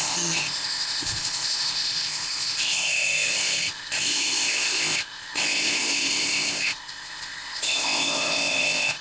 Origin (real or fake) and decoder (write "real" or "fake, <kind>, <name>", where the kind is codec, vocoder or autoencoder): fake, codec, ZipCodec